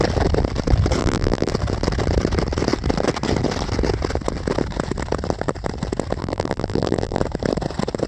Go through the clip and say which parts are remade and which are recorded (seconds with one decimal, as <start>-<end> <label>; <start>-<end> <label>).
0.0-1.0 recorded; 1.0-1.5 remade; 1.5-6.2 recorded; 6.2-7.2 remade; 7.2-8.1 recorded